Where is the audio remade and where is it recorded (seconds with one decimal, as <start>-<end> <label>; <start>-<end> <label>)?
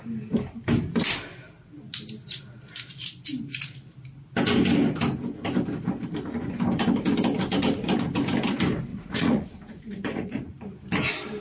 0.0-8.9 recorded; 8.9-10.5 remade; 10.5-11.4 recorded